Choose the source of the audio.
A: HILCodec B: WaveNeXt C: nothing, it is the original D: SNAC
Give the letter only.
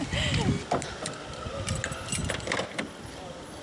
C